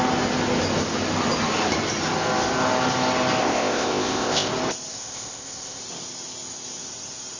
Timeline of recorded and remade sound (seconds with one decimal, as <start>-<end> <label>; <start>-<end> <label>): 0.0-3.4 recorded; 3.4-4.5 remade; 4.5-4.9 recorded; 4.9-5.8 remade; 5.8-7.4 recorded